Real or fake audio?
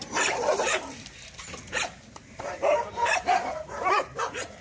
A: fake